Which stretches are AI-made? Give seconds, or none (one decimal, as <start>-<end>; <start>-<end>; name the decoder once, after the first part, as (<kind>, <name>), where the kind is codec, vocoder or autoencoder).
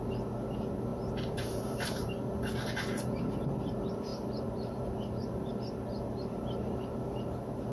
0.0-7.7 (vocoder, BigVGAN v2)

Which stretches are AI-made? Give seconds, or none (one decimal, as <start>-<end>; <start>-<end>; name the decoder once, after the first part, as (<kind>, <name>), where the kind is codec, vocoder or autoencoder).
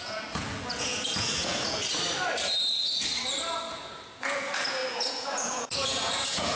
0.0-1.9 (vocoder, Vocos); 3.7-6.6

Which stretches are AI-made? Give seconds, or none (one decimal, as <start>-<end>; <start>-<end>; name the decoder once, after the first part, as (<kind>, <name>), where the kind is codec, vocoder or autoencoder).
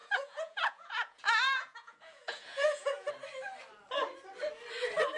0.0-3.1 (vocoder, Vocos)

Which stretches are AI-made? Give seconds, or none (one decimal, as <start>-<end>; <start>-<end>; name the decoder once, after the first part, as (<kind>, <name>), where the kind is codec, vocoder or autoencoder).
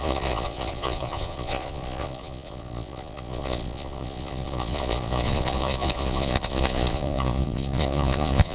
0.0-8.5 (vocoder, Vocos)